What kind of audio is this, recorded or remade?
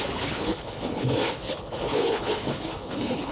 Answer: remade